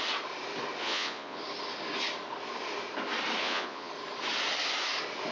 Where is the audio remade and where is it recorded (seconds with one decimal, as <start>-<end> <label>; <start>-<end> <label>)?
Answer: 0.0-0.8 recorded; 0.8-1.4 remade; 1.4-3.4 recorded; 3.4-3.9 remade; 3.9-5.3 recorded